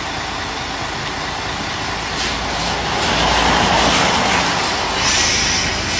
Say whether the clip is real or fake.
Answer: real